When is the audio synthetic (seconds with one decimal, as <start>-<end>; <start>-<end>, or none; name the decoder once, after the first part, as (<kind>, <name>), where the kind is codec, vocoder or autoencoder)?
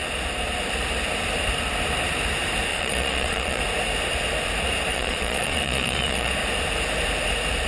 2.7-3.6 (vocoder, Vocos); 4.9-6.3